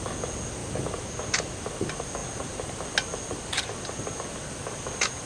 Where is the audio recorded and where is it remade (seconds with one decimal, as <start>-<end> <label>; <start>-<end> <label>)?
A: 0.0-5.3 recorded